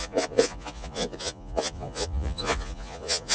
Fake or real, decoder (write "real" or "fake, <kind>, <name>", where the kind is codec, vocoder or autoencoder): fake, vocoder, Vocos